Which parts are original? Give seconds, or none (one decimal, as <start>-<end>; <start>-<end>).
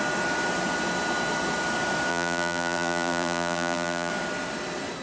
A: 0.0-2.1; 4.1-5.0